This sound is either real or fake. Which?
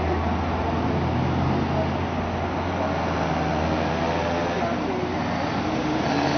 real